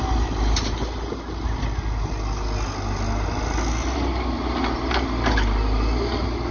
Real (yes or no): yes